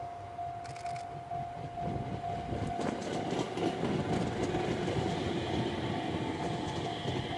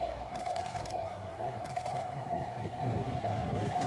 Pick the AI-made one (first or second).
second